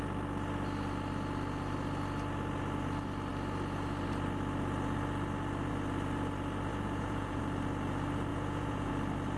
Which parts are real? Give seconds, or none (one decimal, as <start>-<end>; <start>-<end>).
0.0-6.7; 7.4-8.3; 8.9-9.4